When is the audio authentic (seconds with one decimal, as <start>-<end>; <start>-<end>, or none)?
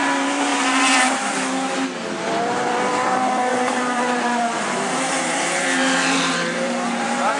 0.0-3.5